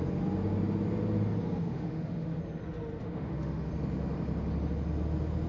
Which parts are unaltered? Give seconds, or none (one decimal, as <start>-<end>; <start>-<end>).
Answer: 0.0-1.6; 2.4-3.0; 3.7-5.5